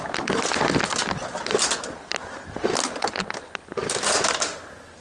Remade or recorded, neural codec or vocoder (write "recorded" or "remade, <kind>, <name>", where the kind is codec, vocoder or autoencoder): recorded